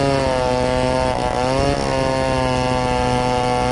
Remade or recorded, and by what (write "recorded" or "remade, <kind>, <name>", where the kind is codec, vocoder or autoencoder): recorded